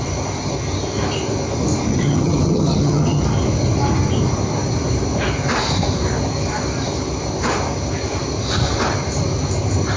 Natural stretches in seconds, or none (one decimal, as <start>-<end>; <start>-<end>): 0.0-1.9; 3.2-10.0